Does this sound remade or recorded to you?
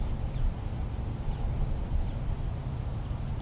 recorded